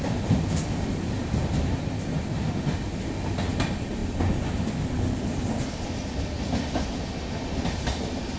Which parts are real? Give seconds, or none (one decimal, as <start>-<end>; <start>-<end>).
0.0-8.4